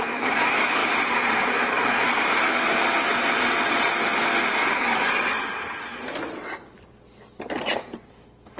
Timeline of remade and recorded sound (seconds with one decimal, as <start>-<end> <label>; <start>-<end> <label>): 0.0-0.8 remade; 0.8-2.4 recorded; 2.4-3.1 remade; 3.1-8.1 recorded; 8.1-8.6 remade